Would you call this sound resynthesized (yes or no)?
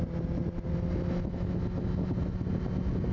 no